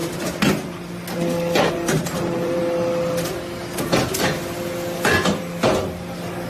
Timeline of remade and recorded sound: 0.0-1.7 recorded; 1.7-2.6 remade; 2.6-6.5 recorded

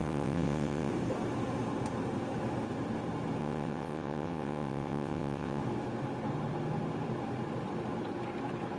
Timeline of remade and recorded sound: 0.0-0.9 remade; 0.9-3.4 recorded; 3.4-5.6 remade; 5.6-8.8 recorded

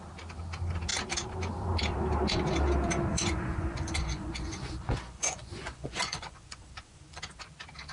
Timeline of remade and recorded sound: 0.0-3.1 recorded; 3.1-7.2 remade; 7.2-7.9 recorded